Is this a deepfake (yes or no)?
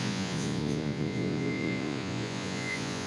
yes